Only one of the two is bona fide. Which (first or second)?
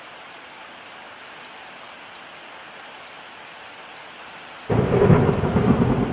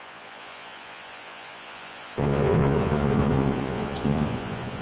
first